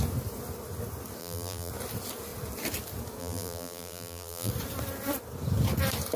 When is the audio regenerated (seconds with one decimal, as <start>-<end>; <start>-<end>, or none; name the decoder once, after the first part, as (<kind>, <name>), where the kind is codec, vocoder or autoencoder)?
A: 1.2-1.7 (vocoder, BigVGAN v2); 3.2-4.5